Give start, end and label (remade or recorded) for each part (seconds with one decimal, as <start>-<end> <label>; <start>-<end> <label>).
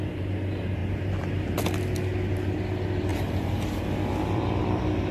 0.0-0.8 recorded; 0.8-1.8 remade; 1.8-3.1 recorded; 3.1-3.8 remade; 3.8-5.1 recorded